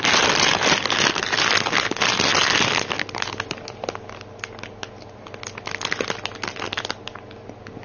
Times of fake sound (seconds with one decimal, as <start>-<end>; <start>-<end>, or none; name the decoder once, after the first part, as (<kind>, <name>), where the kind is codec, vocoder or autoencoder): none